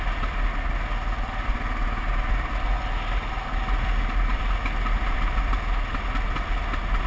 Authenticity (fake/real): real